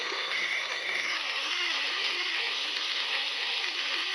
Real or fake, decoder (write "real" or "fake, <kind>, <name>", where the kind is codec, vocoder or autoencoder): fake, codec, SNAC